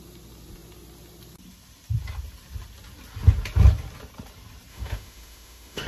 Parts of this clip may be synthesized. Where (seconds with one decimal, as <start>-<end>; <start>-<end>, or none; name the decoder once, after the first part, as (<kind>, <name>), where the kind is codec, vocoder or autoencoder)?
4.7-5.9 (autoencoder, DAC-VAE)